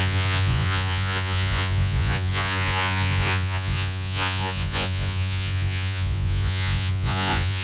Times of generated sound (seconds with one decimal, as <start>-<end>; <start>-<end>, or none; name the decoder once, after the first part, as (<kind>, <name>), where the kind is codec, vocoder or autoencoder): 0.0-7.6 (vocoder, Vocos)